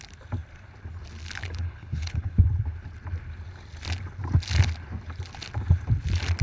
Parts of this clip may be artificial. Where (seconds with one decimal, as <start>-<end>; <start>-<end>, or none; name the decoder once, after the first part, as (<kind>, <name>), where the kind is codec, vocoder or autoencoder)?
1.4-2.4 (codec, HILCodec)